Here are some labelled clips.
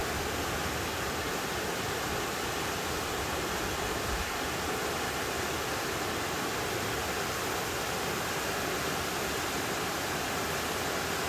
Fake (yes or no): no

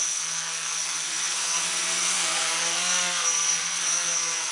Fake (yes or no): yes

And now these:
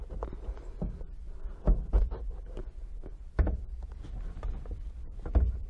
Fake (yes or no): no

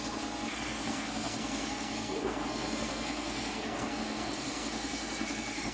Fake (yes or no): yes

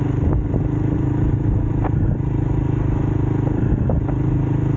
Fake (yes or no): no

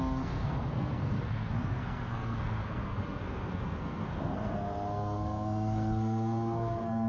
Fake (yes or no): yes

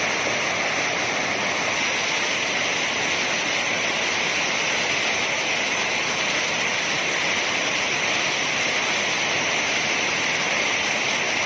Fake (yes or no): no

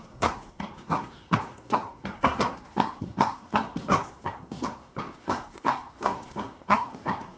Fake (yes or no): yes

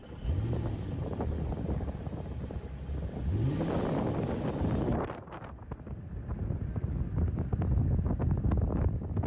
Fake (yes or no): no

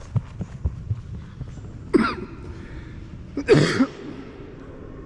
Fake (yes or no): no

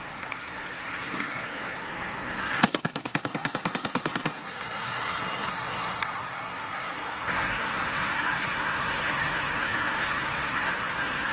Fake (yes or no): yes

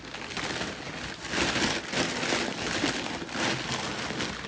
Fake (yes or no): no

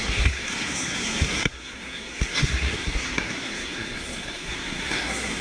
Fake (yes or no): yes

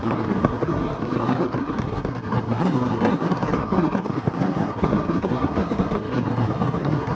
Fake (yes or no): yes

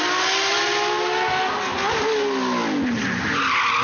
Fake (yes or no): no